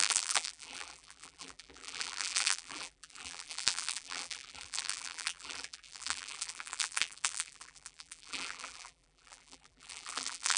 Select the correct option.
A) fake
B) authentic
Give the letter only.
A